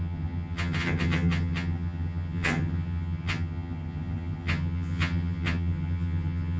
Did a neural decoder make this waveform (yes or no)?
yes